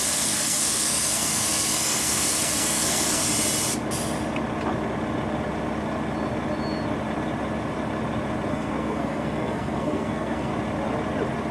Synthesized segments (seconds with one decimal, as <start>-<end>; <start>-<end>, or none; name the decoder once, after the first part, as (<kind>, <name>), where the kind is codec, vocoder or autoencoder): 0.0-3.2 (codec, SNAC); 8.5-10.5